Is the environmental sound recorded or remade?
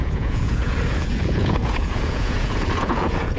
remade